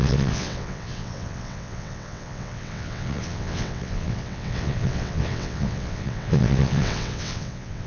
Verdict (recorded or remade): remade